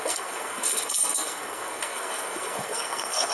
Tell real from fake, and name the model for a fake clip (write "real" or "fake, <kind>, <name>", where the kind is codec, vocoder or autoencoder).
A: fake, codec, SNAC